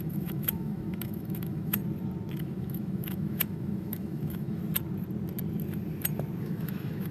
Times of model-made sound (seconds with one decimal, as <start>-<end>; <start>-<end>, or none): 0.0-1.8; 2.4-4.6; 6.4-7.1